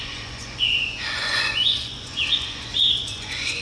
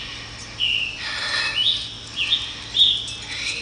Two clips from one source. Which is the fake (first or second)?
first